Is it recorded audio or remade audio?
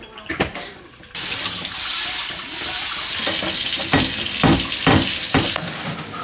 remade